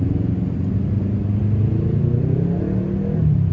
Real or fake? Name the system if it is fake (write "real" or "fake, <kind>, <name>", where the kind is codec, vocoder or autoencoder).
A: real